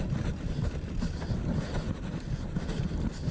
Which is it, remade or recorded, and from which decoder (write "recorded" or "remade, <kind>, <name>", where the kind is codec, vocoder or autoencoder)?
recorded